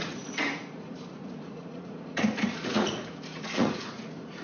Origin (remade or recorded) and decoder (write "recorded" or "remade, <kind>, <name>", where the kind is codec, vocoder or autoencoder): remade, vocoder, Vocos